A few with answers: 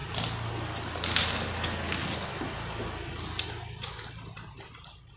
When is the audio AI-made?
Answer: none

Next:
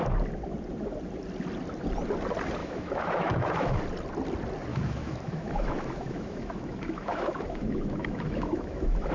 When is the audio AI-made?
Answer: 2.6-3.8 (autoencoder, DAC-VAE); 4.7-9.1

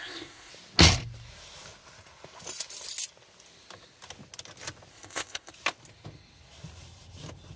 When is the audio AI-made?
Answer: 0.0-0.5 (codec, ZipCodec); 4.9-5.5